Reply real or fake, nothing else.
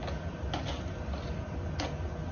real